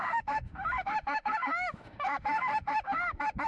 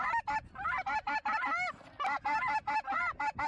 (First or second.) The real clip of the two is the second